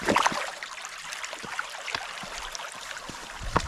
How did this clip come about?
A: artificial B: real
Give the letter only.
B